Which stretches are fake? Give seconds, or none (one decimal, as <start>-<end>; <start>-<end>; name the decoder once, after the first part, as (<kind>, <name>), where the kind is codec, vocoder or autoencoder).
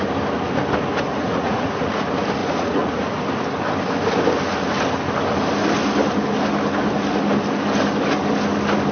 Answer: 1.1-2.0 (vocoder, Vocos); 2.4-3.2